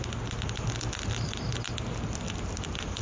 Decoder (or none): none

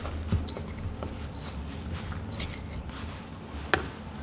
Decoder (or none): none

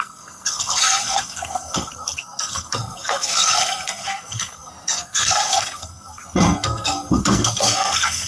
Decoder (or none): codec, SNAC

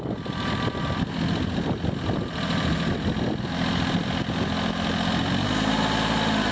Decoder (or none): none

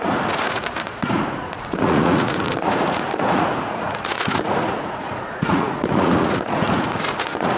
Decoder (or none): vocoder, Vocos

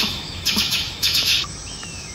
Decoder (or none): autoencoder, DAC-VAE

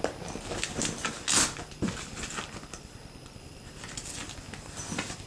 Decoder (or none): none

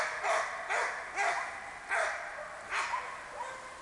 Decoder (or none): none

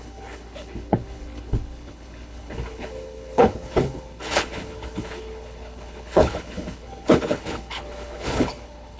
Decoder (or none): codec, HILCodec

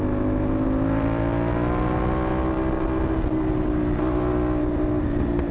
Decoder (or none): none